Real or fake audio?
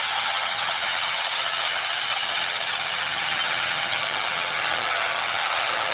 fake